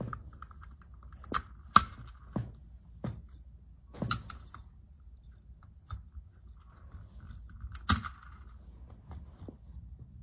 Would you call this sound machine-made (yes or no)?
no